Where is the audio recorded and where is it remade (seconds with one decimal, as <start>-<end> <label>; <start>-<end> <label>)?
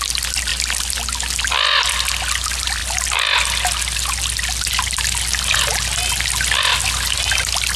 0.0-7.8 recorded